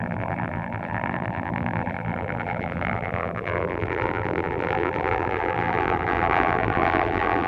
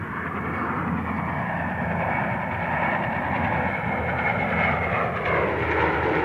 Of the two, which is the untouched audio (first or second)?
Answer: second